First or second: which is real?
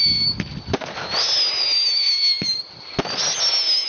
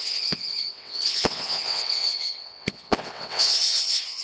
first